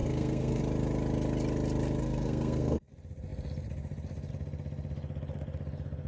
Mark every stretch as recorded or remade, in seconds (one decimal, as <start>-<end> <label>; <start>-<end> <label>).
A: 0.0-0.6 remade; 0.6-2.0 recorded; 2.0-2.9 remade; 2.9-6.1 recorded